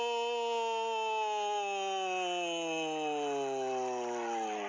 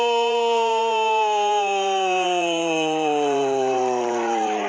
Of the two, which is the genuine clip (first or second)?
first